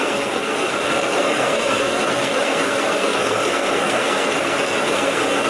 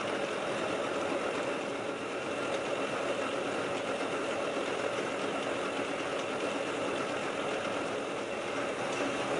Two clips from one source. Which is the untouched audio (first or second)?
second